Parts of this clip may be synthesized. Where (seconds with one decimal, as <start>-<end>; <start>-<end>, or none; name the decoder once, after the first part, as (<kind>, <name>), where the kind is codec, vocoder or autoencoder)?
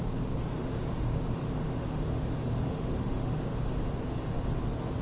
0.6-3.6 (autoencoder, DAC-VAE)